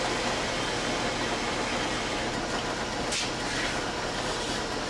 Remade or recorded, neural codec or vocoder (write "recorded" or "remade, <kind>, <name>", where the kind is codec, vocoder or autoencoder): recorded